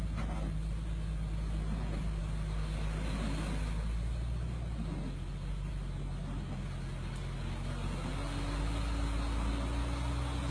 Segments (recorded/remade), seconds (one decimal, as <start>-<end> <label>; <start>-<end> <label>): 0.0-10.5 recorded